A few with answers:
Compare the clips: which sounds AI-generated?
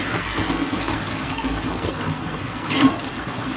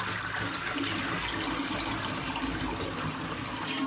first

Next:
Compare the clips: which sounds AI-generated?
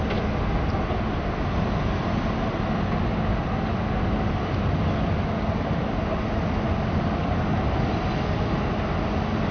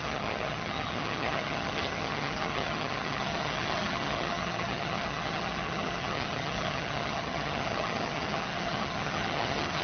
second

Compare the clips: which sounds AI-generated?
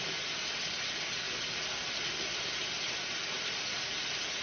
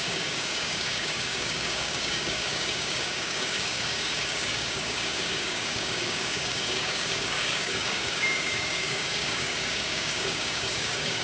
second